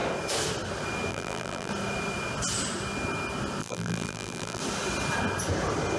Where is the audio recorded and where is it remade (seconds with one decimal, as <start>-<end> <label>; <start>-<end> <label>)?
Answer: 0.0-1.1 recorded; 1.1-1.7 remade; 1.7-3.6 recorded; 3.6-4.6 remade; 4.6-6.0 recorded